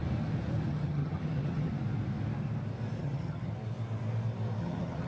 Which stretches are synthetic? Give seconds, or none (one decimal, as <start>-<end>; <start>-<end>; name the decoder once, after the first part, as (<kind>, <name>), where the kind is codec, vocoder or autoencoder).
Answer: 0.7-1.7 (vocoder, HiFi-GAN); 3.0-3.5; 4.6-5.1